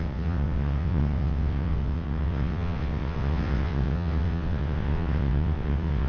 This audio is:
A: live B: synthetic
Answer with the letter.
B